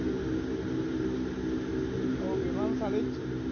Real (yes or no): yes